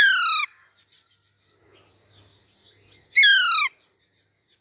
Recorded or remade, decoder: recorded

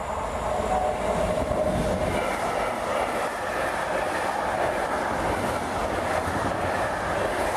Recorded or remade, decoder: recorded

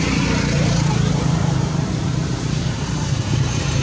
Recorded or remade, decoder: remade, vocoder, BigVGAN v2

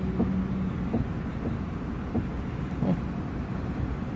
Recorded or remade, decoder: recorded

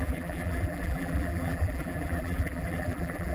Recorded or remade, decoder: remade, vocoder, BigVGAN v2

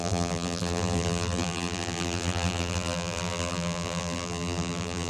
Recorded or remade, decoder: remade, vocoder, BigVGAN v2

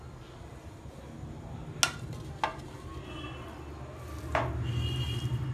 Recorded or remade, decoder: recorded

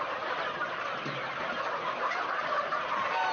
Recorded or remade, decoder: recorded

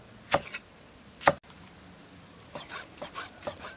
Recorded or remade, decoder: recorded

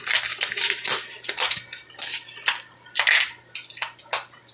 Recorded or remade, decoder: recorded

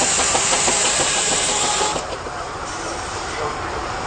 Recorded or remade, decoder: remade, vocoder, BigVGAN v2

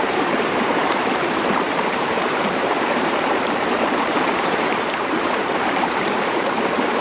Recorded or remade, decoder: remade, vocoder, BigVGAN v2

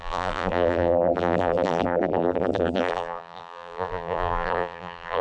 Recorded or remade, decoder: remade, vocoder, BigVGAN v2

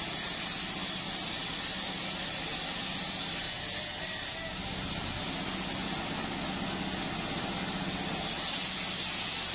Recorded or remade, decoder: recorded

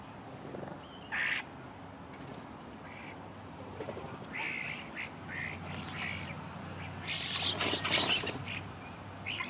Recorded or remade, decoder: recorded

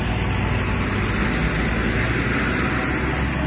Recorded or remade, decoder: recorded